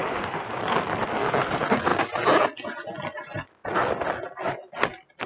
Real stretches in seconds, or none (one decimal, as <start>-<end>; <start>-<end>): 0.6-5.3